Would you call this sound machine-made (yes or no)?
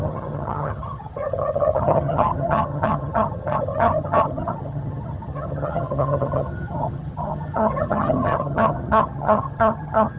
yes